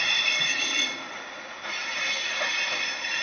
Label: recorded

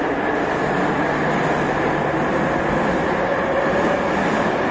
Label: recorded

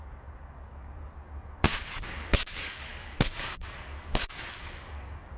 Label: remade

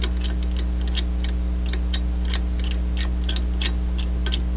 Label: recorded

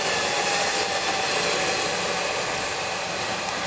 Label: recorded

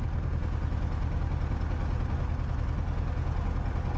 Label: recorded